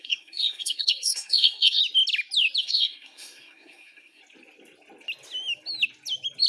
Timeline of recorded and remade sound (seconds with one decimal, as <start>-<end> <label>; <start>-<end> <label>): 0.0-1.8 remade; 1.8-2.6 recorded; 2.6-4.2 remade; 4.2-6.5 recorded